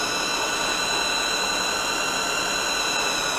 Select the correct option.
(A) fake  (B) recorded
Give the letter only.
B